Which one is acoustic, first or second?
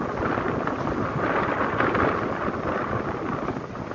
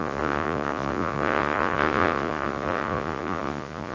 first